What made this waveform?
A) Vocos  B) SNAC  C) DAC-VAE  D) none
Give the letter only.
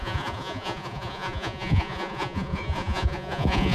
A